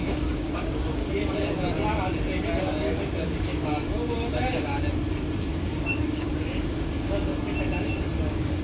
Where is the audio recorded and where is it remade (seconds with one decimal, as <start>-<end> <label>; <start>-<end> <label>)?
0.0-1.0 remade; 1.0-2.6 recorded; 2.6-4.7 remade; 4.7-5.5 recorded; 5.5-7.3 remade; 7.3-8.2 recorded; 8.2-8.6 remade